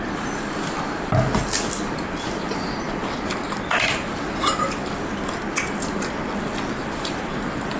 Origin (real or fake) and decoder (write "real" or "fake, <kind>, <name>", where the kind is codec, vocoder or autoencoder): real